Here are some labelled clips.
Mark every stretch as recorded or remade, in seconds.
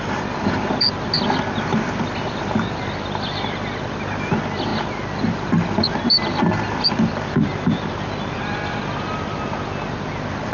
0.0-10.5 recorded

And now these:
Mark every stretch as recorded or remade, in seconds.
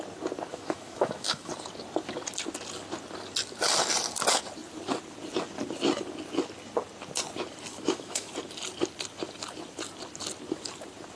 0.0-0.5 recorded; 0.5-1.5 remade; 1.5-7.7 recorded; 7.7-8.3 remade; 8.3-11.2 recorded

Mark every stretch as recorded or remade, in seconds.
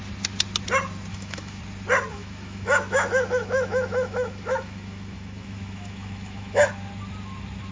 0.0-1.1 recorded; 1.1-1.6 remade; 1.6-2.1 recorded; 2.1-6.7 remade; 6.7-7.7 recorded